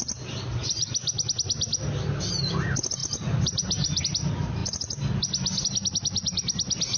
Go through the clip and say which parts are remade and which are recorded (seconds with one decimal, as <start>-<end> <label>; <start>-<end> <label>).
0.0-3.0 recorded; 3.0-4.0 remade; 4.0-7.0 recorded